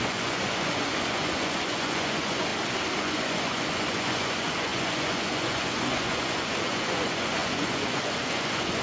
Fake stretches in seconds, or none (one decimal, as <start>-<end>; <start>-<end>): 0.0-2.5; 3.0-8.8